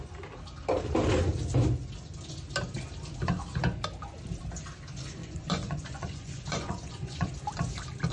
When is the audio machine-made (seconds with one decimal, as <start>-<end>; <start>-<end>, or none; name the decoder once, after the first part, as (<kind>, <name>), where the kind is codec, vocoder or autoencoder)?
5.2-7.3 (vocoder, Vocos)